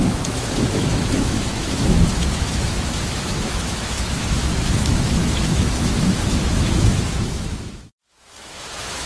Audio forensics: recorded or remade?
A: remade